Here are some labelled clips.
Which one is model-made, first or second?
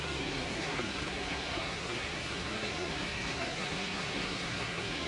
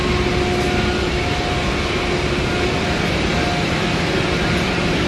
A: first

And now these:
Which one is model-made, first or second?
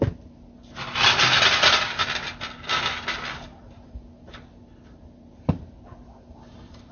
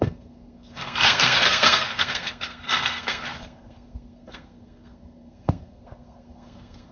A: second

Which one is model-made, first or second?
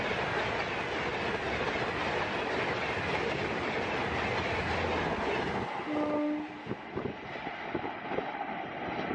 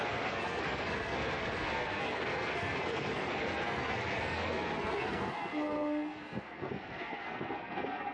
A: second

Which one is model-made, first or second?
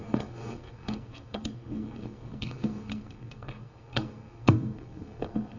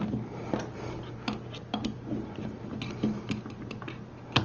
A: first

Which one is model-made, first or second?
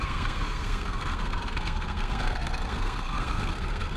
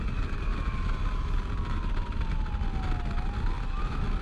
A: first